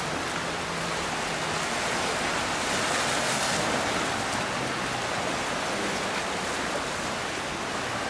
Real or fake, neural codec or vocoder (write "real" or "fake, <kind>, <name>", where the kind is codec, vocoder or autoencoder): real